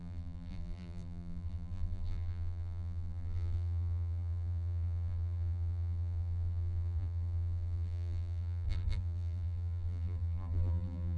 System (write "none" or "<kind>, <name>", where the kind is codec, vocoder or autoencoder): vocoder, BigVGAN v2